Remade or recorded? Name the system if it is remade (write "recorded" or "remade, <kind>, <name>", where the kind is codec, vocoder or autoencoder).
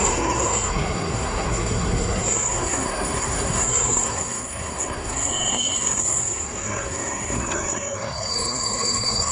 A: remade, codec, SNAC